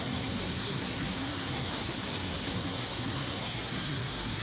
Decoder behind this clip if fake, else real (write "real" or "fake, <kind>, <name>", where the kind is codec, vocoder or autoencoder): fake, codec, SNAC